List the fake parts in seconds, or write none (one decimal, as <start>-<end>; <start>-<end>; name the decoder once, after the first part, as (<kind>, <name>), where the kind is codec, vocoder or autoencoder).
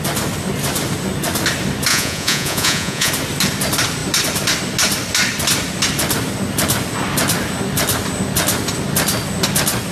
1.9-3.1 (vocoder, Vocos)